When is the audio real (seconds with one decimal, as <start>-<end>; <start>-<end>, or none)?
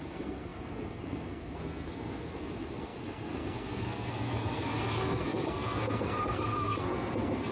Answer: none